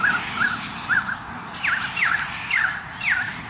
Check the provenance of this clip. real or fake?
real